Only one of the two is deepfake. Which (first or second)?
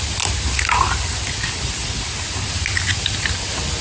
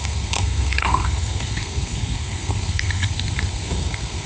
second